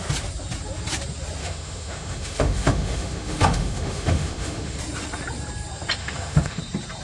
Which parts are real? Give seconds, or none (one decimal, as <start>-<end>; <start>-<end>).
0.0-1.4; 4.8-6.0; 6.6-7.0